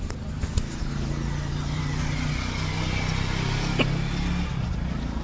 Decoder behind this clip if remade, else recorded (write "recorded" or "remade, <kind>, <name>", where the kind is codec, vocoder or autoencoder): recorded